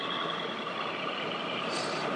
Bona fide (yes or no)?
yes